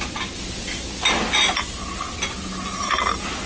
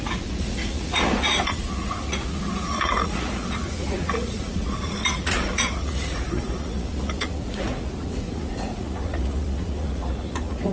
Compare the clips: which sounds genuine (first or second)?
first